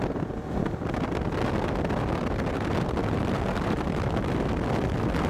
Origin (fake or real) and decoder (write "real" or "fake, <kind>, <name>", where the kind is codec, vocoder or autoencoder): fake, vocoder, BigVGAN v2